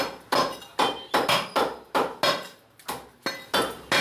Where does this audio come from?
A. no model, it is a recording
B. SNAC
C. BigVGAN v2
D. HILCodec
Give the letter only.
A